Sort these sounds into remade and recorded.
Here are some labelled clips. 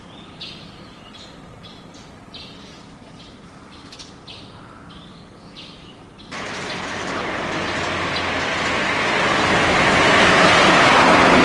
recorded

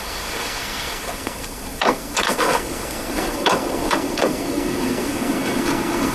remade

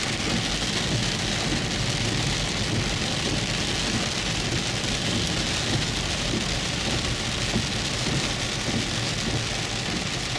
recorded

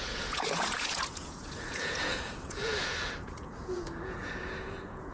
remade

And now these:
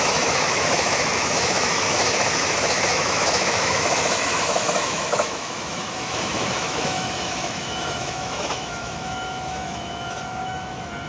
remade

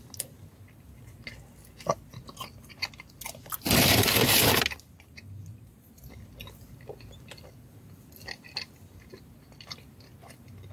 recorded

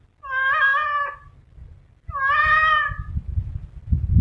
recorded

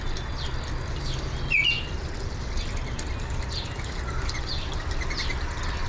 recorded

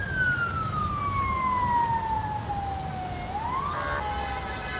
recorded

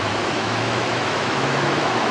remade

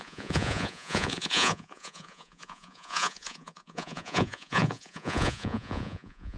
remade